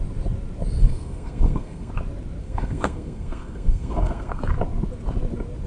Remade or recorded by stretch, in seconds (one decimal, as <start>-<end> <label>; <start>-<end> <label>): 0.0-0.8 recorded; 0.8-1.9 remade; 1.9-2.4 recorded; 2.4-4.4 remade; 4.4-5.7 recorded